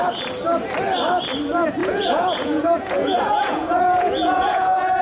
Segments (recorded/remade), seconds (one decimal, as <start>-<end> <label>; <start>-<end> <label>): 0.0-1.8 recorded; 1.8-5.0 remade